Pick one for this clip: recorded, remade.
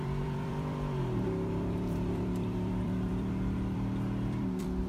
remade